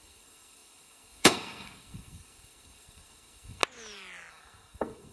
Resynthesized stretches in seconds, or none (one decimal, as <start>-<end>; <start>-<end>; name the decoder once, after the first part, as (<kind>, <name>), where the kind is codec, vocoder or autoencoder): 0.0-3.6 (codec, SNAC); 4.3-5.1